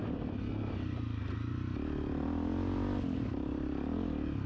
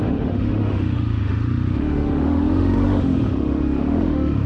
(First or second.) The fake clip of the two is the second